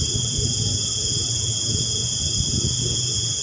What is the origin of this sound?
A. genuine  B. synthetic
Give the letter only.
B